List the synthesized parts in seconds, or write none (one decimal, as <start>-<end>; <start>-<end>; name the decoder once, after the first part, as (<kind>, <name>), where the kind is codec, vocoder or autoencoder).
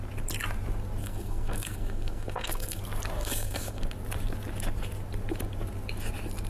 1.0-2.8 (codec, SNAC); 3.2-3.8